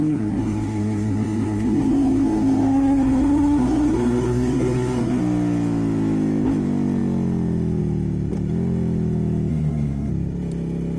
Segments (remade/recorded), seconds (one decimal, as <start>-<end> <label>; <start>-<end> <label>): 0.0-5.2 remade; 5.2-9.5 recorded; 9.5-10.1 remade; 10.1-11.0 recorded